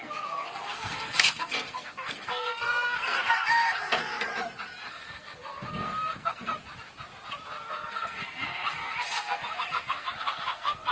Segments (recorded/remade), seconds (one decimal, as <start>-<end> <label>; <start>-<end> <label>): 0.0-4.3 remade; 4.3-4.9 recorded; 4.9-6.5 remade; 6.5-7.7 recorded; 7.7-10.9 remade